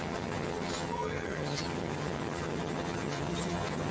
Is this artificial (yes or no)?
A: yes